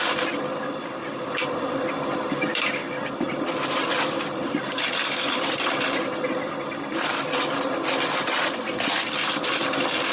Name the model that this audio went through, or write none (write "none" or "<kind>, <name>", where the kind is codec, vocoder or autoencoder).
vocoder, BigVGAN v2